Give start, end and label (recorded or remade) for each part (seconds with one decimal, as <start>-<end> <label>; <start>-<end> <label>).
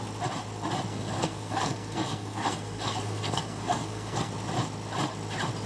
0.0-0.9 recorded; 0.9-4.3 remade; 4.3-5.7 recorded